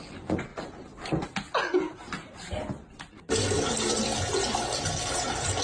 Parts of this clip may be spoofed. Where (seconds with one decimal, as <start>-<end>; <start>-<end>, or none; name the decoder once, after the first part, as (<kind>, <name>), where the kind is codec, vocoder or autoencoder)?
none